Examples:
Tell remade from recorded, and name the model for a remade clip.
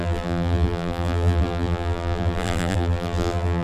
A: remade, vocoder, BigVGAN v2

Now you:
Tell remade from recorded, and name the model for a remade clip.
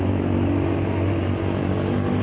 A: recorded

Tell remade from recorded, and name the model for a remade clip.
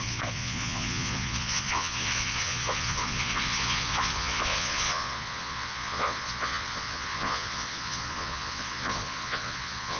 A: remade, vocoder, Vocos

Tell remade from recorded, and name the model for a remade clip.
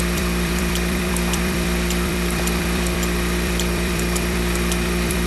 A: remade, vocoder, BigVGAN v2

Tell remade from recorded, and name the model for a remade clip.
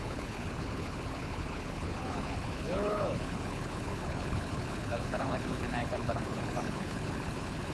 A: remade, codec, HILCodec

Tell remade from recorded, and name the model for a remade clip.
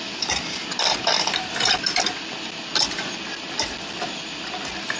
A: recorded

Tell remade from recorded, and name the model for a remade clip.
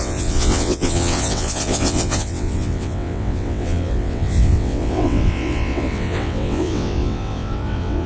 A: remade, vocoder, WaveNeXt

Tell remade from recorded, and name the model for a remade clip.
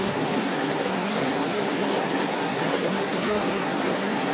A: remade, codec, SNAC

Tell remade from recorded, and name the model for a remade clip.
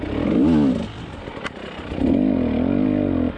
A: recorded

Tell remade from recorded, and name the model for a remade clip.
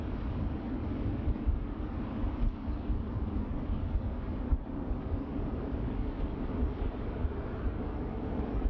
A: remade, codec, DAC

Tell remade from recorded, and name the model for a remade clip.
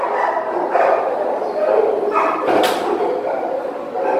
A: recorded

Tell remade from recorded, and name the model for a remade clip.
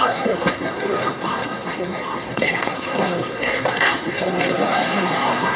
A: remade, codec, SNAC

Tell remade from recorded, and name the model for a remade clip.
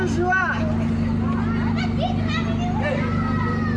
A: recorded